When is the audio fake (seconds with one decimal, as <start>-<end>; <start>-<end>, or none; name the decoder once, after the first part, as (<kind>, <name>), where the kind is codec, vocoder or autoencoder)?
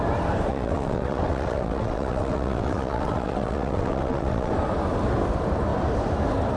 0.5-4.5 (vocoder, WaveNeXt)